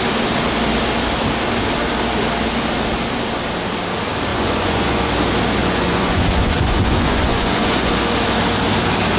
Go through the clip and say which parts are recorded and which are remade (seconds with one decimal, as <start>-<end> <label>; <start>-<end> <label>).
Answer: 0.0-4.3 recorded; 4.3-5.1 remade; 5.1-5.6 recorded; 5.6-7.9 remade; 7.9-9.2 recorded